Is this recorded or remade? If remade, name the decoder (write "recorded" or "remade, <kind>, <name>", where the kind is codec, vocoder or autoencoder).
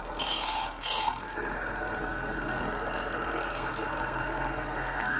remade, codec, SNAC